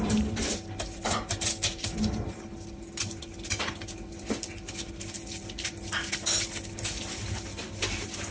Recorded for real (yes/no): yes